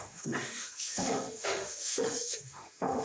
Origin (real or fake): fake